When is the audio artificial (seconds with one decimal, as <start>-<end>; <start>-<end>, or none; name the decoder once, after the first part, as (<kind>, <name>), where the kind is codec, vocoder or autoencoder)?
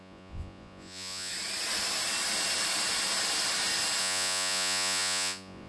0.0-1.3 (vocoder, Vocos); 4.0-5.7